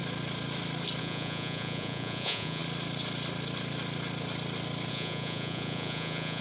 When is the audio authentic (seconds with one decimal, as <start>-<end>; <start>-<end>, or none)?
0.0-1.0; 2.6-4.9